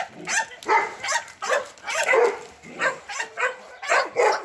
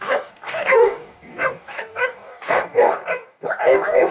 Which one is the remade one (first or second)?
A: second